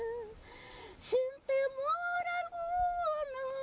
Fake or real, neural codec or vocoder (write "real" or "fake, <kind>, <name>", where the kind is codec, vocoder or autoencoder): real